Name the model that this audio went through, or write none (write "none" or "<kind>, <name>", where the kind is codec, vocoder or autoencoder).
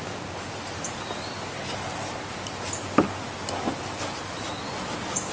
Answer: none